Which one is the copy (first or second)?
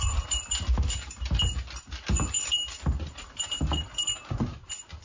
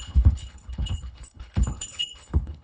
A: second